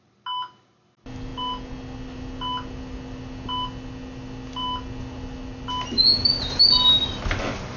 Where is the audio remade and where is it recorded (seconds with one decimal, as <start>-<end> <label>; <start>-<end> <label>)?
0.0-7.8 recorded